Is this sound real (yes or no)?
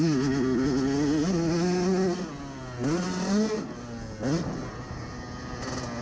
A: yes